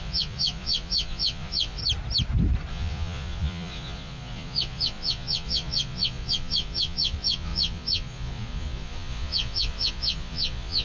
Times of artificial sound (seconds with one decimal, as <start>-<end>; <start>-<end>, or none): 0.0-1.8; 2.7-10.8